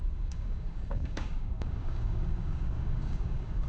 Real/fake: fake